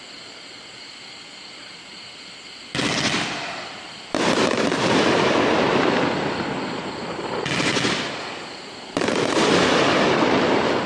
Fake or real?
real